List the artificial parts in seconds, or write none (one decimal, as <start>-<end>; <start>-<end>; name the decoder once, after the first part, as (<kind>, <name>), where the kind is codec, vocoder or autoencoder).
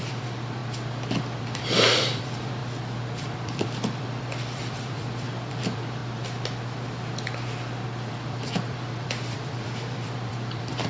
0.0-0.6 (vocoder, BigVGAN v2); 1.4-2.6; 3.2-6.0; 8.1-10.9